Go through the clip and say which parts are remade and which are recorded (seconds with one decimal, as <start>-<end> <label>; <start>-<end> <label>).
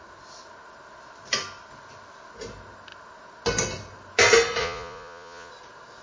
0.0-4.6 recorded; 4.6-5.5 remade; 5.5-6.0 recorded